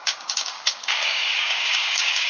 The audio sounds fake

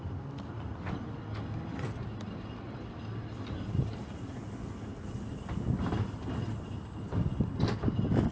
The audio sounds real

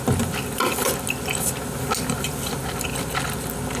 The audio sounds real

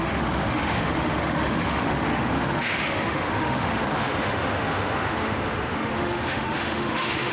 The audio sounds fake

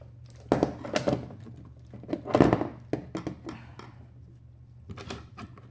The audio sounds real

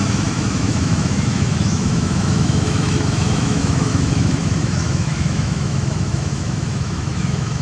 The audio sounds fake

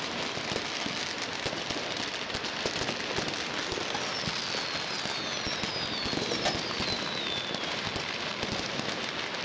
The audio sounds real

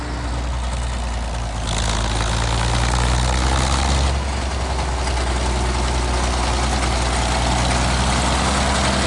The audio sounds real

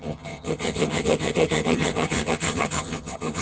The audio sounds fake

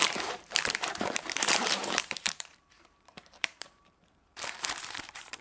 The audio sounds fake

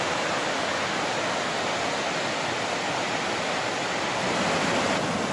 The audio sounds real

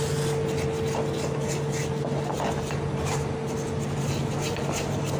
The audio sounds real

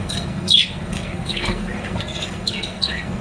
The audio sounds fake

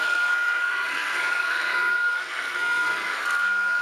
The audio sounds fake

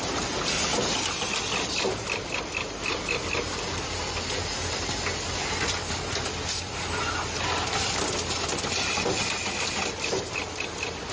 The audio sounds real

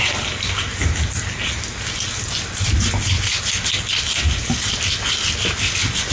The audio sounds real